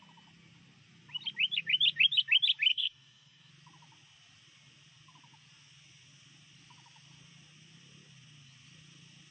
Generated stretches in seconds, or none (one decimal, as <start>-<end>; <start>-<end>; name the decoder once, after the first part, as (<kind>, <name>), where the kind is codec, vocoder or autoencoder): 2.7-3.5 (codec, DAC)